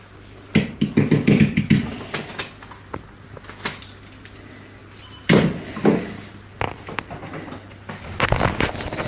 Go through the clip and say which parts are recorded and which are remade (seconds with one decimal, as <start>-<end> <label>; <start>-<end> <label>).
0.0-4.8 recorded; 4.8-5.4 remade; 5.4-9.1 recorded